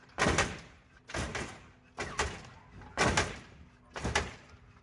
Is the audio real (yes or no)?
yes